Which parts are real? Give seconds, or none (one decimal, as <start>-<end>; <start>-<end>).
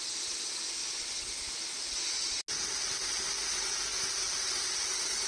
0.0-5.3